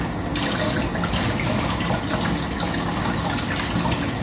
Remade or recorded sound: recorded